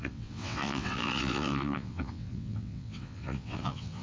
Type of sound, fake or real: fake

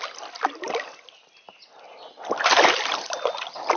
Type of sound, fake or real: real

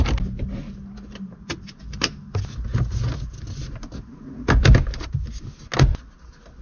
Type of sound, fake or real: real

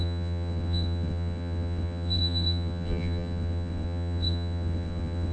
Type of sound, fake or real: fake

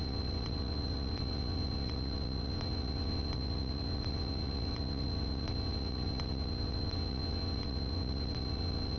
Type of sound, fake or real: fake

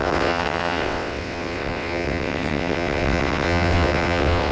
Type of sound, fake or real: fake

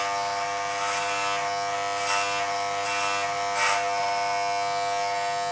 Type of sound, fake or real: real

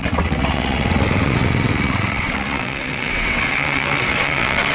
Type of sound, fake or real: fake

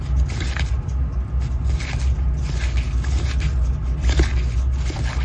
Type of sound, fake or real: real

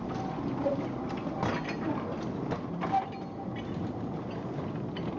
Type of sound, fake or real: real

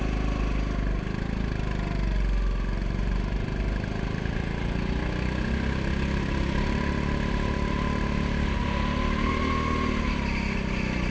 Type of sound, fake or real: real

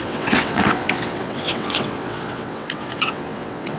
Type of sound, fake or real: fake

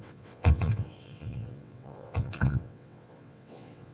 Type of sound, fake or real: fake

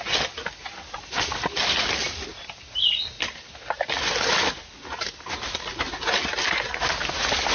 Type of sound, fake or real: real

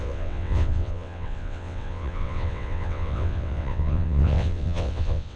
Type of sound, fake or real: fake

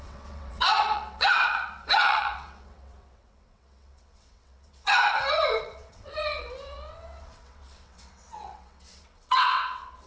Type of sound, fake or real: fake